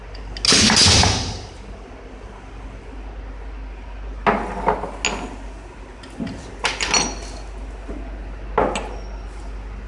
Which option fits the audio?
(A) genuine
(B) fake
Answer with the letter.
A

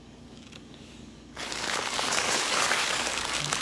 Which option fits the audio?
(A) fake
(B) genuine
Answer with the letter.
A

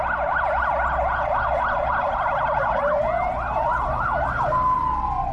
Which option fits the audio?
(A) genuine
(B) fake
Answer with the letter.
A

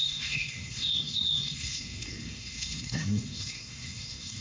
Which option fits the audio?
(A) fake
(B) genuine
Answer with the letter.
A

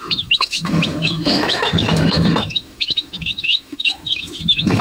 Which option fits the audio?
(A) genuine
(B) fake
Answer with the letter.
B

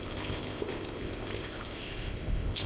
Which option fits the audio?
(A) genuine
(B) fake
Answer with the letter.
B